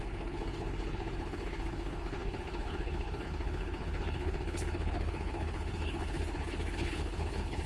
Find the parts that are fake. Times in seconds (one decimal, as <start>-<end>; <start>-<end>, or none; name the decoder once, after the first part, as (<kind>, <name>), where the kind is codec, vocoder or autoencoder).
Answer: 0.0-7.7 (codec, HILCodec)